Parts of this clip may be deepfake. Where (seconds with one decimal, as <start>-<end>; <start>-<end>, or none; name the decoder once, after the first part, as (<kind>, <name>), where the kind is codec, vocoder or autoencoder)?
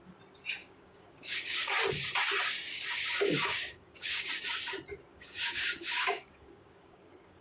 0.6-1.7 (codec, DAC); 2.7-4.3; 5.1-7.4